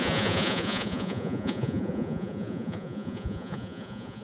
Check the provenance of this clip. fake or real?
fake